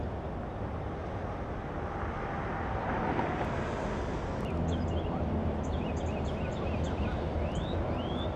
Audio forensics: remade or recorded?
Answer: recorded